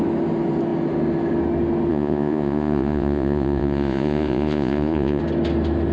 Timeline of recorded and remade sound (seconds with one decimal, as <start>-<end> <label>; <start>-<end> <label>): 0.0-1.9 recorded; 1.9-5.2 remade; 5.2-5.9 recorded